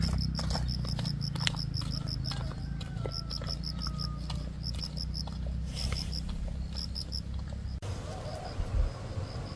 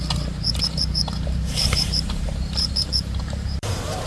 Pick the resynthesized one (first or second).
second